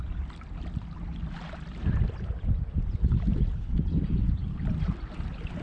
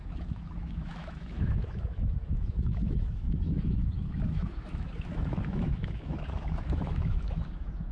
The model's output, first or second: second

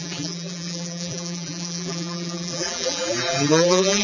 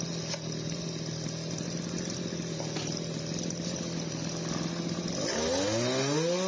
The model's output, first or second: first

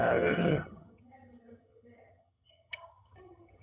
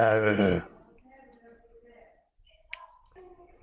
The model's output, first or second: first